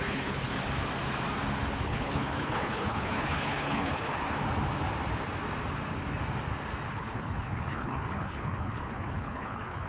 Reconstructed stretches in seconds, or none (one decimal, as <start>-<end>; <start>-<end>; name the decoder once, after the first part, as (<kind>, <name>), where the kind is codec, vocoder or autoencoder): 0.0-0.5 (codec, HILCodec); 1.8-4.1; 6.9-9.9